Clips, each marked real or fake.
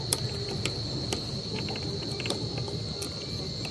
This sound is real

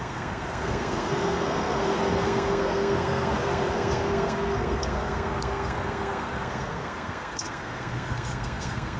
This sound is fake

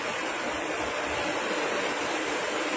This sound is real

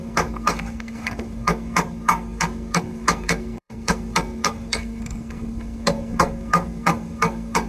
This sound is fake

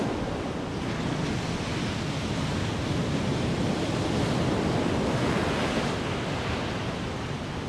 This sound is real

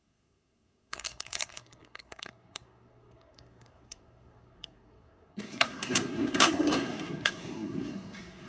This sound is fake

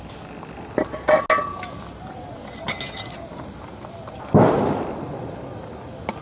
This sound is real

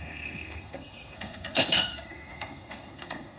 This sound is fake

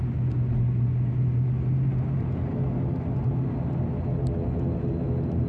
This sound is real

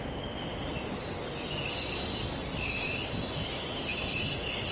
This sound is real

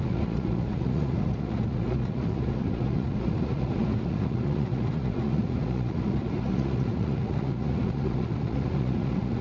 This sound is fake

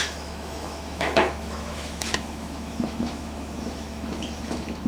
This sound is fake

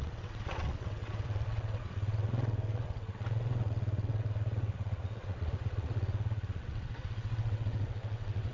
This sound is fake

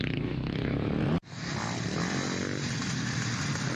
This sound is real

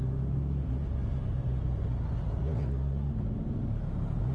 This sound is real